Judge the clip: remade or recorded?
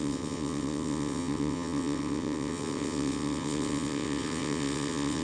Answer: remade